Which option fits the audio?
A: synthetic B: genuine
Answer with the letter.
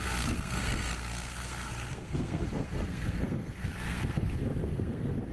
A